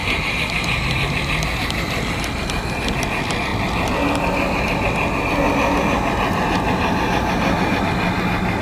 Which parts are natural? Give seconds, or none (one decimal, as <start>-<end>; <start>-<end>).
2.4-8.6